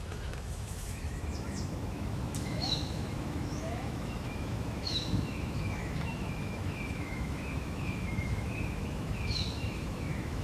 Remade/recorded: remade